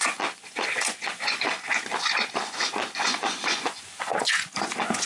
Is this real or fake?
fake